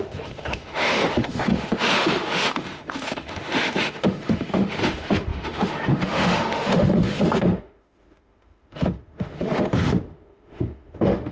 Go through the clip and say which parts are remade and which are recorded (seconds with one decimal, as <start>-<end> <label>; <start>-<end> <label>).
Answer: 0.0-11.3 remade